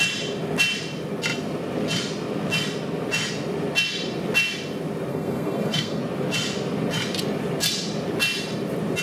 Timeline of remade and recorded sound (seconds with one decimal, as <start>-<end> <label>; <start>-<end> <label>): 0.0-5.1 recorded; 5.1-6.0 remade; 6.0-9.0 recorded